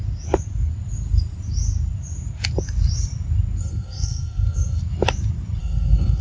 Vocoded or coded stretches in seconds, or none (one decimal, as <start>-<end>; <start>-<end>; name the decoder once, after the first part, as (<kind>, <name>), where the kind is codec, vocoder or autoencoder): 3.6-4.8 (codec, SNAC); 5.6-6.2